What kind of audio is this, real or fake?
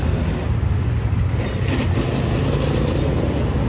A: real